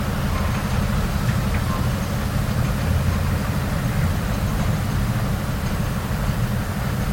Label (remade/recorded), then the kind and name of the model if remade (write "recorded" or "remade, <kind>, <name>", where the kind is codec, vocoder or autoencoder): recorded